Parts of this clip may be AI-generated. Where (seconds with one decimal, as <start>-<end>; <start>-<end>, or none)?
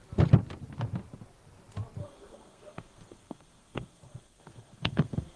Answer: 2.0-5.4